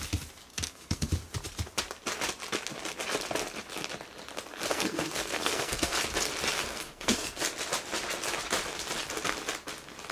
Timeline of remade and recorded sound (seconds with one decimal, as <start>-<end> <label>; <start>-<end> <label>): 0.0-0.5 recorded; 0.5-1.1 remade; 1.1-4.7 recorded; 4.7-6.0 remade; 6.0-6.7 recorded; 6.7-7.4 remade; 7.4-10.1 recorded